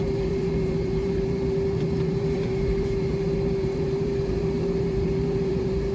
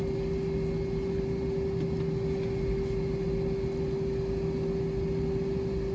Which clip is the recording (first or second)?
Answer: second